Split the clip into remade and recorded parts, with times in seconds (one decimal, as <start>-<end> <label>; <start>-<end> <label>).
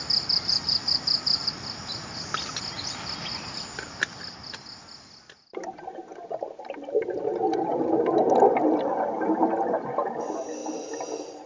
0.0-11.5 recorded